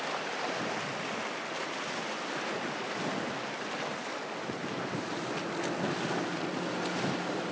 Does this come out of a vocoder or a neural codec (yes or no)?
no